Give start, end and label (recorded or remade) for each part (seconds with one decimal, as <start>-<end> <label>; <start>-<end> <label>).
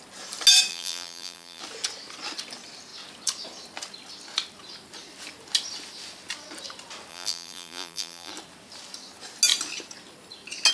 0.0-0.7 recorded; 0.7-1.6 remade; 1.6-7.1 recorded; 7.1-8.3 remade; 8.3-10.7 recorded